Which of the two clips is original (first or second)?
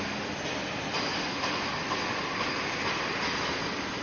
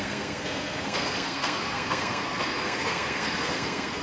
first